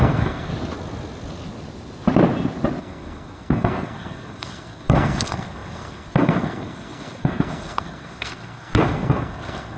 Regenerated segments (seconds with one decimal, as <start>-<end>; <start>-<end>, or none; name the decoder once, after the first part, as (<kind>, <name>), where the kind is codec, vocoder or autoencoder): 0.0-0.5 (codec, SNAC); 2.8-9.8